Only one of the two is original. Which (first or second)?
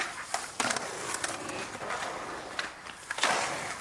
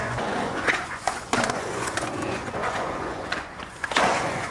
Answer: first